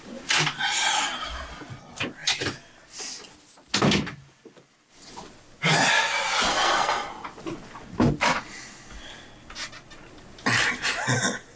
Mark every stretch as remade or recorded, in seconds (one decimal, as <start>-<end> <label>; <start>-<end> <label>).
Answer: 0.0-6.5 recorded; 6.5-7.1 remade; 7.1-11.6 recorded